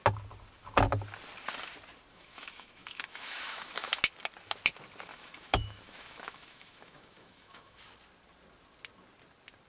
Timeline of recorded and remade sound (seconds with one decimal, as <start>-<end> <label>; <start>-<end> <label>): 0.0-2.1 recorded; 2.1-4.0 remade; 4.0-5.1 recorded; 5.1-7.8 remade; 7.8-9.7 recorded